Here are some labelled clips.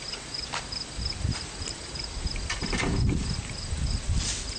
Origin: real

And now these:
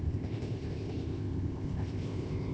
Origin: fake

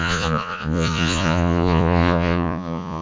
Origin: fake